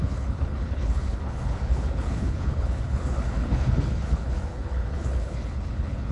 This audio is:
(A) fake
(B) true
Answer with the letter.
A